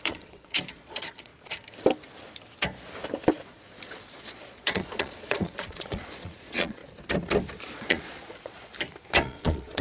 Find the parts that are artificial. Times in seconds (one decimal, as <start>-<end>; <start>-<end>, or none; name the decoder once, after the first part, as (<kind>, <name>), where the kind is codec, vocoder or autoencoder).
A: 0.0-1.3 (vocoder, Vocos); 3.4-6.8; 7.6-8.7; 9.2-9.8

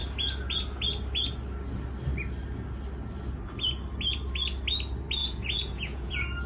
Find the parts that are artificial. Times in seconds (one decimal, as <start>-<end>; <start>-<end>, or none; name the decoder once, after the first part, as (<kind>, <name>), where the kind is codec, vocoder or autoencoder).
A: 5.2-6.1 (vocoder, Vocos)

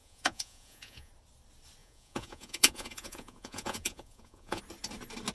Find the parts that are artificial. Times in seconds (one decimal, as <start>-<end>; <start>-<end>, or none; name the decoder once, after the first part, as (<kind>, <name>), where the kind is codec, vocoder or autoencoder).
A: 0.0-1.1 (vocoder, Vocos); 1.8-4.6

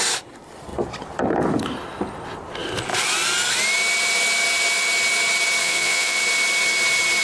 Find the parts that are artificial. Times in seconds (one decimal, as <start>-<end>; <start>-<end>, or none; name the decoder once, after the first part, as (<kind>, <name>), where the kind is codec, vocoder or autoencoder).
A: 5.6-6.2 (vocoder, Vocos)

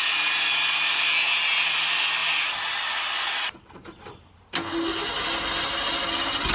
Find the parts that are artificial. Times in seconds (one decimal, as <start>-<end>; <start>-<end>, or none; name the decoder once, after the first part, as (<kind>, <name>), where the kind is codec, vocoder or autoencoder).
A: none

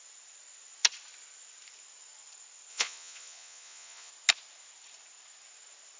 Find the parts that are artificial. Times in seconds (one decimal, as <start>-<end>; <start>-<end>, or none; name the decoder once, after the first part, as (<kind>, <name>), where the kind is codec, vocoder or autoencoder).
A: 2.7-4.1 (vocoder, Vocos)